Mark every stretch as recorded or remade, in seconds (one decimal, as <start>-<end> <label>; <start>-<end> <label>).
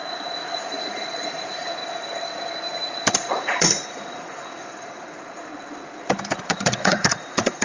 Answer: 0.0-1.8 remade; 1.8-3.1 recorded; 3.1-5.5 remade; 5.5-6.4 recorded; 6.4-7.6 remade